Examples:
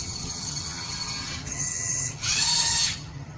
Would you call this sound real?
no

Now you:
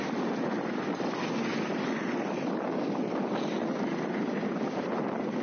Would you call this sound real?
yes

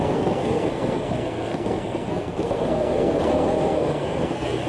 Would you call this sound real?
no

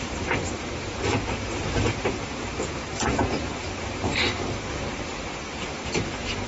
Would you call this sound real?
no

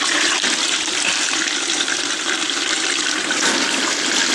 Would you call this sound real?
yes